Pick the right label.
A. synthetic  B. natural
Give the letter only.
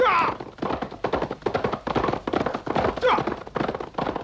B